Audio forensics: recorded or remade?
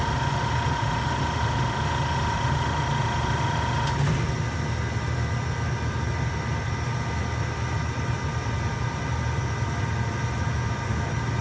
recorded